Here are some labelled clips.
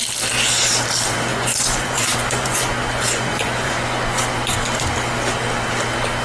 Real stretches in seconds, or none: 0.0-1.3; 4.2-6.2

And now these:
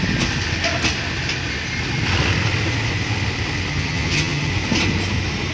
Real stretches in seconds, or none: 0.0-3.7; 4.5-5.5

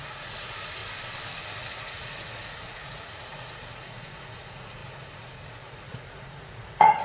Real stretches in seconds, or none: 0.8-1.6

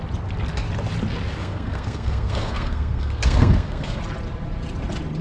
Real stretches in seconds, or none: 0.0-1.4; 4.0-5.2

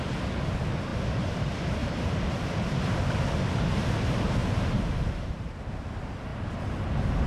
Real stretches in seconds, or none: 0.0-4.4; 5.6-7.3